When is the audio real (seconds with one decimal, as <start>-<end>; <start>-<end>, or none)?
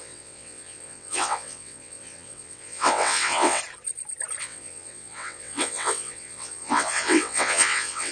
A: 3.6-4.4